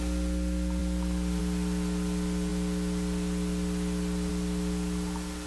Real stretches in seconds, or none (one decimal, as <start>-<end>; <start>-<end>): 0.0-5.5